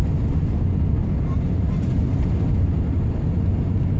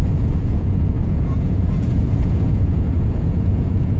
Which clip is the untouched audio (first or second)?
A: first